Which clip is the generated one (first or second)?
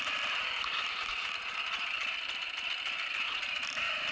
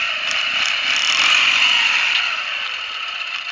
second